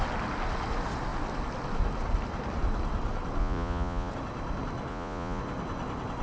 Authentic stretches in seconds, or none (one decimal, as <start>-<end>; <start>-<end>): 0.0-3.4; 4.1-4.9; 5.4-6.2